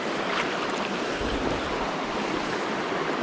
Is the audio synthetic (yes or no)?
no